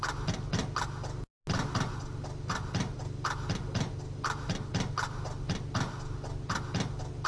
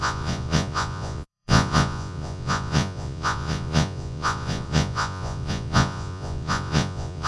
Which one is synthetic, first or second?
second